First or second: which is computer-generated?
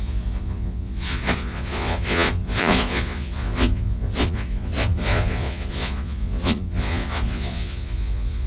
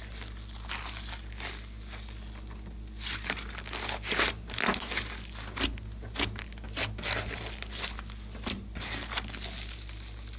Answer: first